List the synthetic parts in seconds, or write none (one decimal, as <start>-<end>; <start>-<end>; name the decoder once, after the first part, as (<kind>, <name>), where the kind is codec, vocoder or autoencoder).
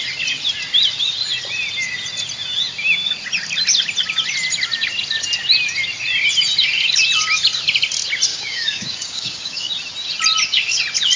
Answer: 8.3-9.7 (codec, DAC)